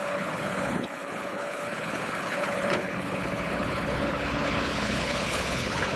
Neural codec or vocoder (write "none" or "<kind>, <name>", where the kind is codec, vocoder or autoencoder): codec, HILCodec